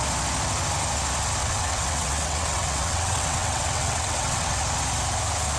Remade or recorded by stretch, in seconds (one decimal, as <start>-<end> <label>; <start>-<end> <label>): 0.0-1.4 recorded; 1.4-4.6 remade; 4.6-5.6 recorded